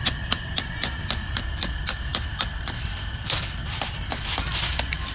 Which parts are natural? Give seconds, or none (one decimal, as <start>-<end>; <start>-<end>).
0.0-5.1